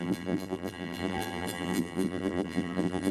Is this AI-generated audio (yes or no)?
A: yes